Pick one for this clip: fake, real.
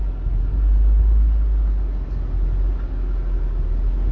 real